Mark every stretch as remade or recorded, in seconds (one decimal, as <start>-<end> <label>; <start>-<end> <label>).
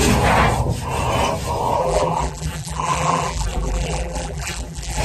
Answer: 0.0-1.8 recorded; 1.8-5.0 remade